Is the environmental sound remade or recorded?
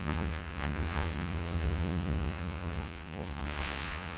remade